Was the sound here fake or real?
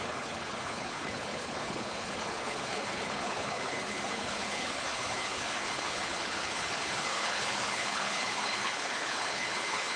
fake